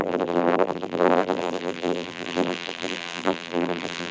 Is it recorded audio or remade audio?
remade